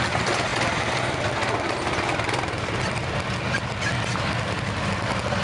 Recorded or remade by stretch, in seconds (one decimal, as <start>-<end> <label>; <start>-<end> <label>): 0.0-5.4 recorded